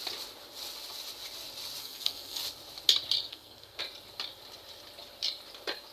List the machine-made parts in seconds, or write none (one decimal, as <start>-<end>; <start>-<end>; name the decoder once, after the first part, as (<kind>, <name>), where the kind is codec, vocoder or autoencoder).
1.8-2.4 (codec, SNAC); 3.3-3.8